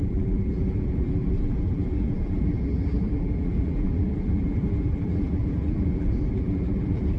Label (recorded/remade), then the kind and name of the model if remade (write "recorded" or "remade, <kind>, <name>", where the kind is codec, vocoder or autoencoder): remade, vocoder, BigVGAN v2